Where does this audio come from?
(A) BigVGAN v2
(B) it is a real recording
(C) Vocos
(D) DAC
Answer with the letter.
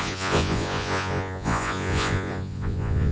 C